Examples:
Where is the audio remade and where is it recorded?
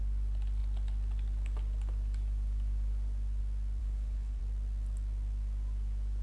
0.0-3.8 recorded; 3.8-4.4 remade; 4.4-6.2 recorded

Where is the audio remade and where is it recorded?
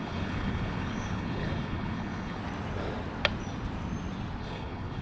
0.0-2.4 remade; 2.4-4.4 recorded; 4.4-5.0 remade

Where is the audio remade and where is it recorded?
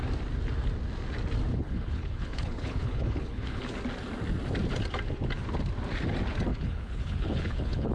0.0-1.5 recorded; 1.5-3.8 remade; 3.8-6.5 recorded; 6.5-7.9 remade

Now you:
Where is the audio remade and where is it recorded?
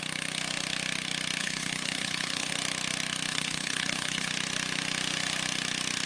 0.0-1.4 recorded; 1.4-2.5 remade; 2.5-3.3 recorded; 3.3-4.3 remade; 4.3-6.1 recorded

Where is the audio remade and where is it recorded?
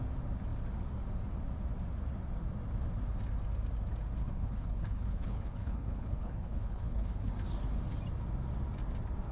0.0-4.2 recorded; 4.2-7.3 remade; 7.3-9.3 recorded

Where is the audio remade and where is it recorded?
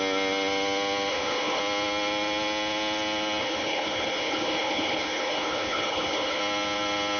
0.0-1.1 recorded; 1.1-1.6 remade; 1.6-3.4 recorded; 3.4-6.4 remade; 6.4-7.2 recorded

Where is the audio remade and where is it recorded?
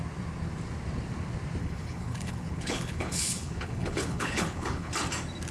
0.0-1.6 recorded; 1.6-4.9 remade; 4.9-5.5 recorded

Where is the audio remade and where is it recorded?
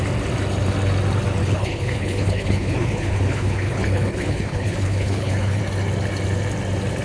0.0-1.4 recorded; 1.4-5.6 remade; 5.6-7.0 recorded